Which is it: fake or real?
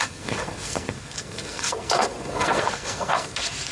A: fake